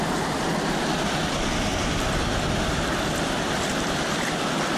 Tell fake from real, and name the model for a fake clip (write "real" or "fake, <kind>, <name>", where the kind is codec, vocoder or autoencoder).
real